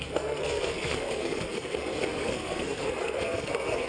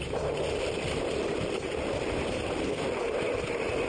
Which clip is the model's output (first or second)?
first